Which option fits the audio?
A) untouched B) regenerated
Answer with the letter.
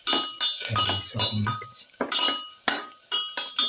A